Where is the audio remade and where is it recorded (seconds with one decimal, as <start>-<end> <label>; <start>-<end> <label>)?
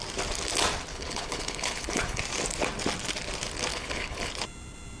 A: 0.0-0.9 recorded; 0.9-2.2 remade; 2.2-3.7 recorded; 3.7-4.3 remade; 4.3-5.0 recorded